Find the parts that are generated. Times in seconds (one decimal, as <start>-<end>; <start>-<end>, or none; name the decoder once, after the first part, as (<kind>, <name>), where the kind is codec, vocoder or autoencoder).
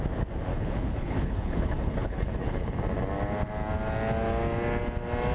0.5-2.8 (codec, HILCodec)